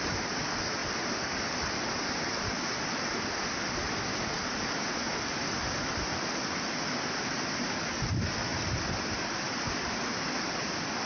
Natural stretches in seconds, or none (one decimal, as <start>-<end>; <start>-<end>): 0.0-11.1